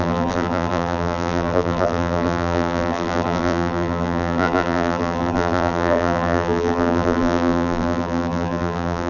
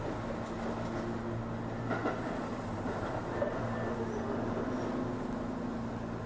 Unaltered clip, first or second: second